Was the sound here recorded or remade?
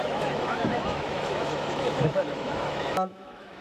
remade